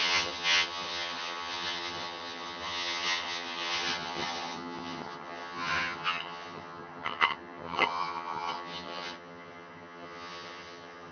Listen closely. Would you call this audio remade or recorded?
remade